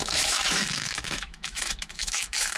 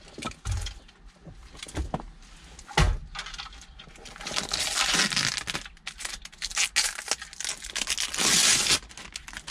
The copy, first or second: first